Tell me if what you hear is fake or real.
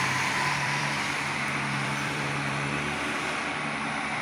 fake